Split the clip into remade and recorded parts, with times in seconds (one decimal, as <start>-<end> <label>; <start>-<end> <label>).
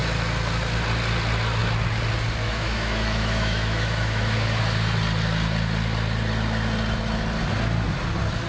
0.0-2.4 recorded; 2.4-4.6 remade; 4.6-8.5 recorded